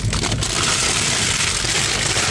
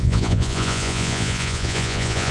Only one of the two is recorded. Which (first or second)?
first